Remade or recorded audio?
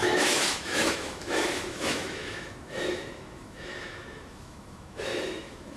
remade